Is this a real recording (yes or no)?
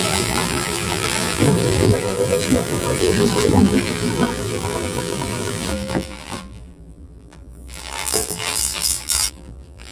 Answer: no